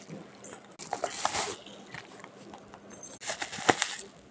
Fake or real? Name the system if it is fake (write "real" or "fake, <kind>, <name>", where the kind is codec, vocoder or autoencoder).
real